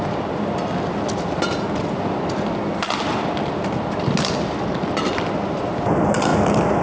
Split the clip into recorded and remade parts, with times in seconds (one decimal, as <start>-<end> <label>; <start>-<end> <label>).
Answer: 0.0-6.8 recorded